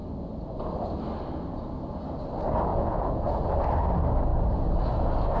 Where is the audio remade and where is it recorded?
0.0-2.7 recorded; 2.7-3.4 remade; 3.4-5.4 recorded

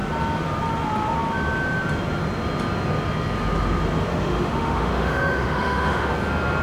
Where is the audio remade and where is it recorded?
0.0-4.1 recorded; 4.1-6.1 remade; 6.1-6.6 recorded

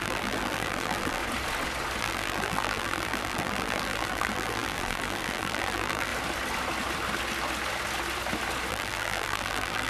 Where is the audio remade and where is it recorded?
0.0-1.2 remade; 1.2-2.0 recorded; 2.0-6.1 remade; 6.1-8.7 recorded; 8.7-9.9 remade

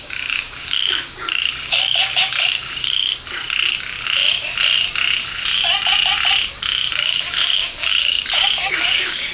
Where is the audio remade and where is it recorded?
0.0-3.1 remade; 3.1-6.9 recorded; 6.9-9.3 remade

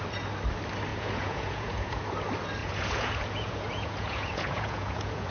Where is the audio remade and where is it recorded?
0.0-0.9 recorded; 0.9-2.0 remade; 2.0-2.6 recorded; 2.6-5.3 remade

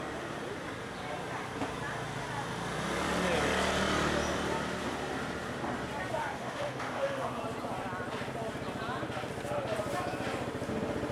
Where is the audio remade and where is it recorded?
0.0-6.2 recorded; 6.2-7.4 remade; 7.4-11.1 recorded

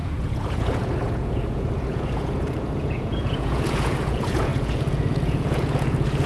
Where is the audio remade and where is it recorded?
0.0-6.3 remade

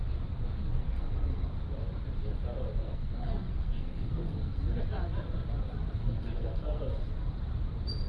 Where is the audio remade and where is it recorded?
0.0-0.6 recorded; 0.6-1.5 remade; 1.5-2.8 recorded; 2.8-4.8 remade; 4.8-6.0 recorded; 6.0-6.8 remade; 6.8-8.1 recorded